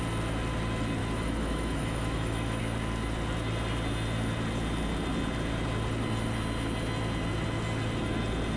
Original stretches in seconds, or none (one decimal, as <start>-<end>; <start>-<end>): 0.0-1.0; 2.6-8.6